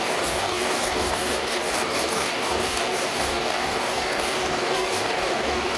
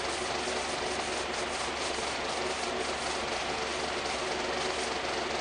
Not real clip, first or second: first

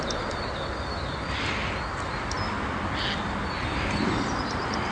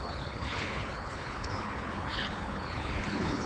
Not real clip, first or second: second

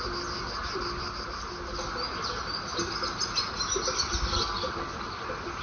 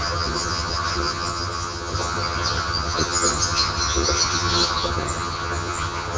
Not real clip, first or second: second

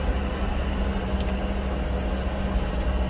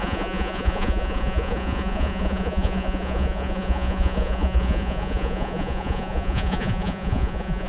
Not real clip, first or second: second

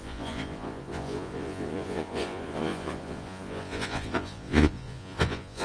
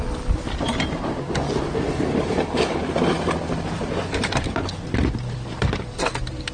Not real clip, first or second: first